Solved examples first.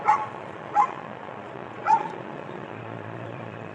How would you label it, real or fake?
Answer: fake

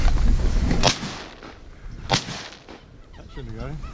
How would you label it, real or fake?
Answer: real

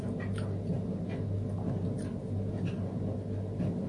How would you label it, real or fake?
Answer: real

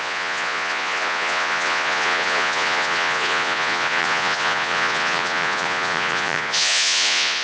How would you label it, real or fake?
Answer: fake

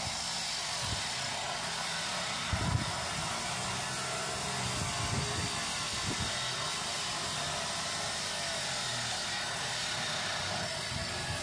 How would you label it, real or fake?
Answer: real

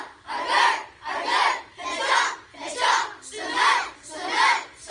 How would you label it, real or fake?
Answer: real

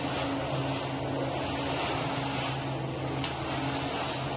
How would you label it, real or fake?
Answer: real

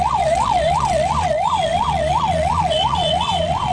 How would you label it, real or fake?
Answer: fake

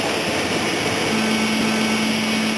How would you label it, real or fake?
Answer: real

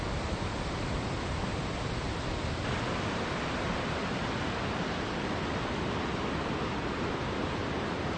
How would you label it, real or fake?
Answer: real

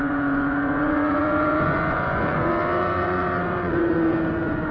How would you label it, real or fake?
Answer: fake